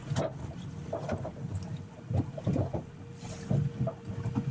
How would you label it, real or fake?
real